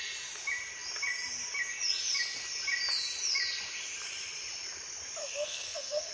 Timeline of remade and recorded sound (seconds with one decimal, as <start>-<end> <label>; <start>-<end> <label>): 0.0-5.2 recorded; 5.2-6.1 remade